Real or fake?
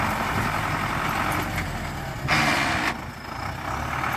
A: real